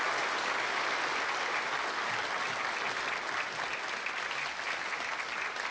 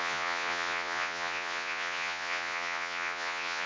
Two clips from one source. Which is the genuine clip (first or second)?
first